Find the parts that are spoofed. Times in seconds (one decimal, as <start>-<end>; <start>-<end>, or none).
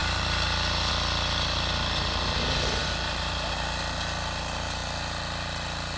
0.0-0.9; 2.8-3.5